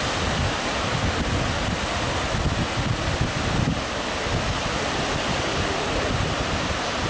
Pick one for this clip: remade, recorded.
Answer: recorded